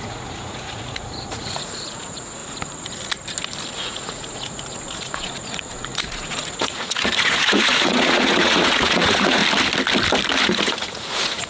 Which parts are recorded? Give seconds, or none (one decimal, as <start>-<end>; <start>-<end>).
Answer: 2.4-3.7; 9.4-10.4